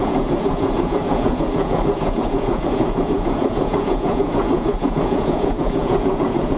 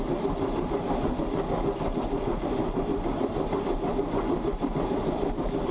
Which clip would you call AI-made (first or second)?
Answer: first